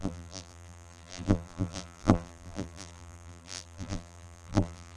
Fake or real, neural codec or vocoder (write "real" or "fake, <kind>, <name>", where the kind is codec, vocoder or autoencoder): fake, vocoder, BigVGAN v2